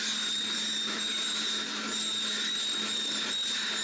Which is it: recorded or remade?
recorded